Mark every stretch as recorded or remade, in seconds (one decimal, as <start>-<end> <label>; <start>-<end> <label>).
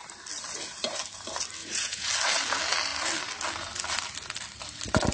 0.0-1.6 recorded; 1.6-2.1 remade; 2.1-5.1 recorded